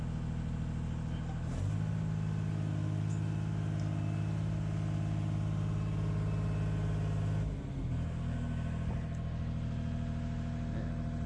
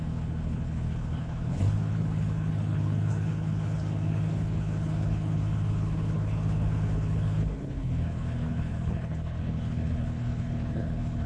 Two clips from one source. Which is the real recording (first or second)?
first